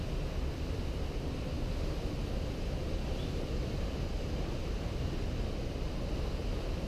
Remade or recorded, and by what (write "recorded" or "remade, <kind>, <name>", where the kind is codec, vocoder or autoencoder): recorded